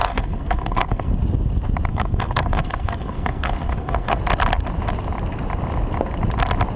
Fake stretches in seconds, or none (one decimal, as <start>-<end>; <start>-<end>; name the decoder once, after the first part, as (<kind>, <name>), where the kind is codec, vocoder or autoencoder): 0.0-1.1 (codec, SNAC); 1.9-4.2